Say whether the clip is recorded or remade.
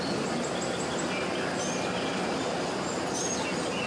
recorded